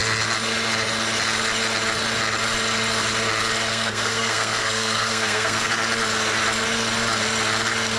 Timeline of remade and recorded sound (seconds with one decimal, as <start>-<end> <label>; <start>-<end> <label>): 0.0-3.7 recorded; 3.7-5.7 remade; 5.7-8.0 recorded